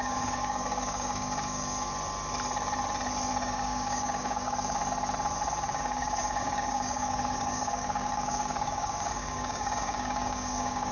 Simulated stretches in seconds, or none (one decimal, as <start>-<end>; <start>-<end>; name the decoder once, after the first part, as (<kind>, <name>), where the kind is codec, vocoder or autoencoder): 0.0-1.9 (codec, DAC); 3.3-4.8; 5.6-10.9